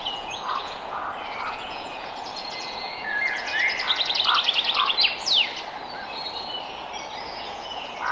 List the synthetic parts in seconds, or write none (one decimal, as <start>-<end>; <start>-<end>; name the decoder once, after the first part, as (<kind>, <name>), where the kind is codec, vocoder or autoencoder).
0.0-1.0 (vocoder, Vocos); 1.5-3.5; 7.2-8.1